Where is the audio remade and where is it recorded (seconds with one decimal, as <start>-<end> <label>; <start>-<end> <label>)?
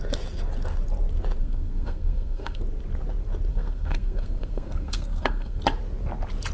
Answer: 0.0-1.4 recorded; 1.4-2.6 remade; 2.6-3.5 recorded; 3.5-5.6 remade; 5.6-6.5 recorded